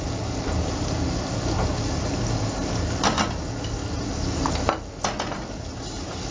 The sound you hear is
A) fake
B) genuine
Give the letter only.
B